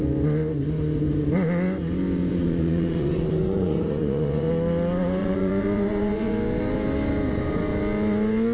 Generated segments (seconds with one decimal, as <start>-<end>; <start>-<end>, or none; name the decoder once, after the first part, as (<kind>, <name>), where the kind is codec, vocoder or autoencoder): 2.3-4.5 (vocoder, Vocos); 5.2-6.3